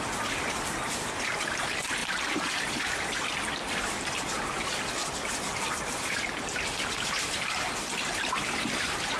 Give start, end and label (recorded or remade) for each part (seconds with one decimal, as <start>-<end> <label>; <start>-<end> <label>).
0.0-9.2 recorded